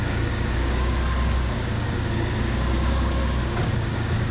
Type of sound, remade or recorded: remade